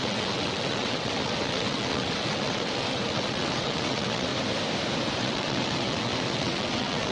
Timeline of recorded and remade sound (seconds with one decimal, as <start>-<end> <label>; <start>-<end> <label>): 0.0-4.3 remade; 4.3-5.2 recorded; 5.2-7.1 remade